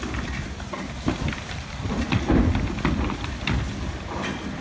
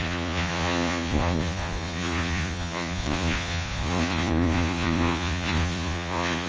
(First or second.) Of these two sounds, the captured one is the first